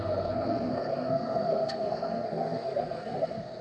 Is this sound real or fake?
fake